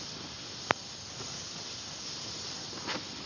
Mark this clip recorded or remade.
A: recorded